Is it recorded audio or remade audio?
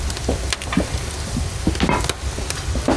recorded